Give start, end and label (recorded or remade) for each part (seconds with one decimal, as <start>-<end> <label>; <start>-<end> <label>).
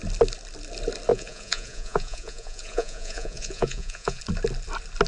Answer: 0.0-1.1 recorded; 1.1-4.2 remade; 4.2-5.1 recorded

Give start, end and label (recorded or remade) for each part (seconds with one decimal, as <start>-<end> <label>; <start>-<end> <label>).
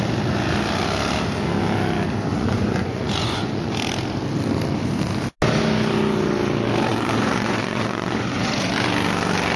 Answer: 0.0-2.3 recorded; 2.3-3.7 remade; 3.7-6.9 recorded; 6.9-8.7 remade; 8.7-9.6 recorded